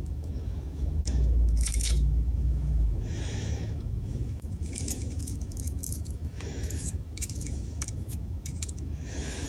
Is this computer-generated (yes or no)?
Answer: yes